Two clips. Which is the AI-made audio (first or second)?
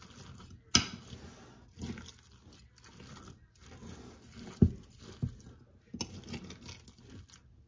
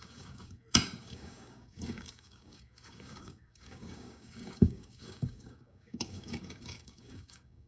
second